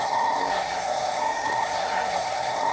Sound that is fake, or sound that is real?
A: fake